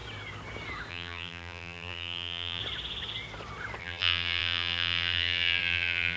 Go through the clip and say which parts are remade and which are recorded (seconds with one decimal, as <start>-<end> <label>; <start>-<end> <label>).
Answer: 0.0-0.9 recorded; 0.9-2.6 remade; 2.6-3.8 recorded; 3.8-6.2 remade